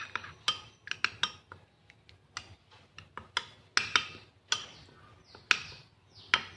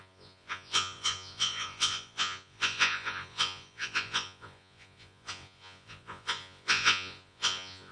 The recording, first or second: first